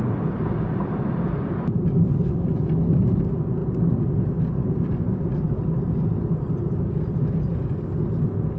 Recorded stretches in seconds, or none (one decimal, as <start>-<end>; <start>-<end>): 0.0-8.6